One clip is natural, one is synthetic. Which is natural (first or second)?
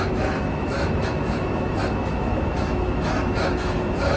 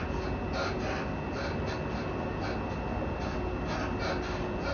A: second